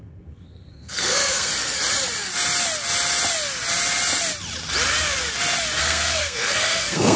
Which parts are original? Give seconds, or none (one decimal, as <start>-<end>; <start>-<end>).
1.5-5.8